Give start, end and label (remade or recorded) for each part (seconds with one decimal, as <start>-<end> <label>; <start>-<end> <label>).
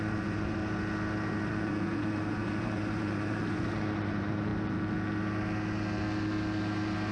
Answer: 0.0-0.6 remade; 0.6-1.4 recorded; 1.4-4.5 remade; 4.5-7.1 recorded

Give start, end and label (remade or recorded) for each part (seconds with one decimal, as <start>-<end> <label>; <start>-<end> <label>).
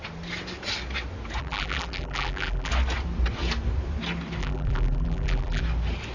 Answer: 0.0-1.4 recorded; 1.4-2.7 remade; 2.7-4.4 recorded; 4.4-5.6 remade; 5.6-6.1 recorded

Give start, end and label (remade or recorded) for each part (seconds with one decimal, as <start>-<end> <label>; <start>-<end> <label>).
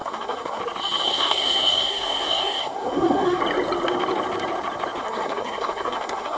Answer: 0.0-0.6 remade; 0.6-1.1 recorded; 1.1-3.4 remade; 3.4-5.0 recorded; 5.0-6.4 remade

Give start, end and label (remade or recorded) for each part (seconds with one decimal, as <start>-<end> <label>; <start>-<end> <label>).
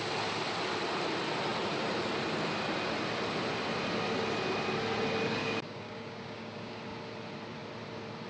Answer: 0.0-5.4 recorded; 5.4-6.8 remade; 6.8-8.3 recorded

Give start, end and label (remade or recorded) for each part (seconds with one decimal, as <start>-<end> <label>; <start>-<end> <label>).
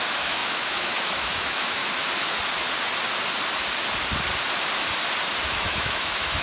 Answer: 0.0-1.8 remade; 1.8-5.5 recorded; 5.5-6.4 remade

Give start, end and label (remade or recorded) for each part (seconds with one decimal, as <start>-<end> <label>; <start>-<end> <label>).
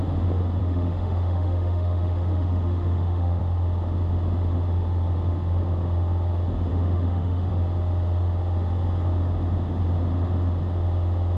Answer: 0.0-0.6 recorded; 0.6-3.4 remade; 3.4-6.7 recorded; 6.7-7.5 remade; 7.5-11.4 recorded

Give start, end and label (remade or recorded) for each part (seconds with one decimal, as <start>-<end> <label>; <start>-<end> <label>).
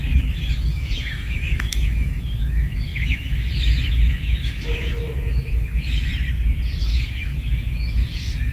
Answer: 0.0-6.1 remade; 6.1-6.8 recorded; 6.8-8.5 remade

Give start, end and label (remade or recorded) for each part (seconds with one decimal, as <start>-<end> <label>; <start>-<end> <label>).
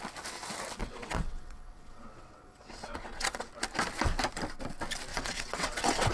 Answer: 0.0-0.8 recorded; 0.8-3.5 remade; 3.5-5.1 recorded; 5.1-6.1 remade